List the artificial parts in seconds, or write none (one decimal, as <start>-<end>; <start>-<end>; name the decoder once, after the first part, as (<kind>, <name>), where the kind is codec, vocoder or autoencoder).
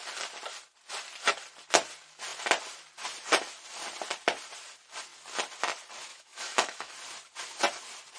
6.1-6.9 (autoencoder, DAC-VAE)